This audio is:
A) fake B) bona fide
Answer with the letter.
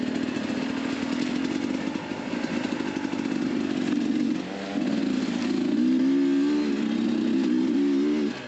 B